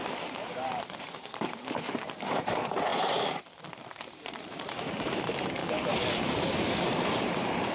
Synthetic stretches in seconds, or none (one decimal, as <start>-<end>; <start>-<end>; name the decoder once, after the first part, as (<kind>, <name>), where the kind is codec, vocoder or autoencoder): 0.0-2.9 (vocoder, BigVGAN v2); 3.9-5.6; 6.8-7.7